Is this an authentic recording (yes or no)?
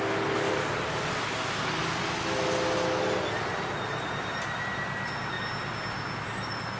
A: yes